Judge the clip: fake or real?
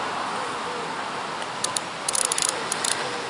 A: real